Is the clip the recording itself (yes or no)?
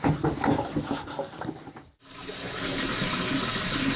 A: yes